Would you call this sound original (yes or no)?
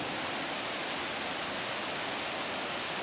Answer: yes